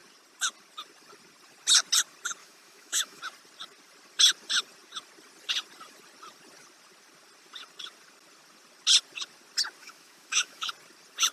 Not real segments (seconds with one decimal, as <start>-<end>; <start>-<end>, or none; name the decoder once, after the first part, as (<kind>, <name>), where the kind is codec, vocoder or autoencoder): 2.4-3.2 (autoencoder, DAC-VAE); 9.8-10.7